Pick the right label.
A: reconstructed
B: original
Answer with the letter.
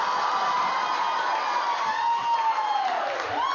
B